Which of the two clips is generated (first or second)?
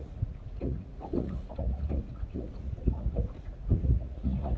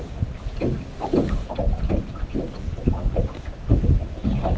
first